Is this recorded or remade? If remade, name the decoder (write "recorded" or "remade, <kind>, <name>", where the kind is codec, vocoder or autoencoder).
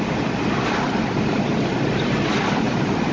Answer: recorded